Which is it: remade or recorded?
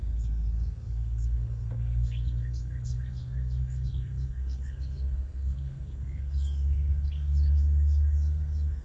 remade